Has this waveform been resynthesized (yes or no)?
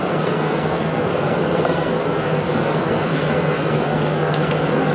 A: yes